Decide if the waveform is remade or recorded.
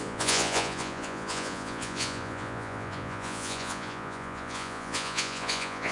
remade